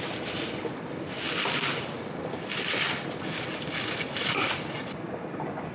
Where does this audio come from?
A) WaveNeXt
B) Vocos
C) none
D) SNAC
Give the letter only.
C